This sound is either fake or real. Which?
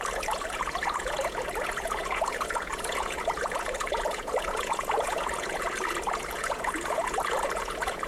fake